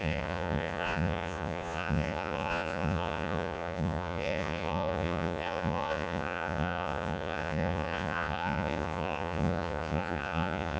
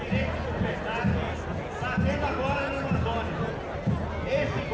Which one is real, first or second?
second